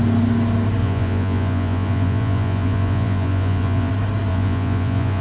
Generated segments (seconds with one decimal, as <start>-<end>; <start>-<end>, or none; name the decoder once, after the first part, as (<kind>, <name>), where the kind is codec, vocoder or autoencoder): 0.8-3.9 (vocoder, Vocos); 4.3-5.2